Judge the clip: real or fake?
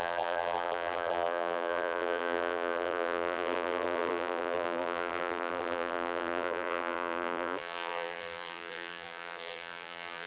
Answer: fake